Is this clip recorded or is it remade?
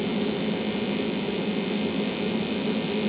recorded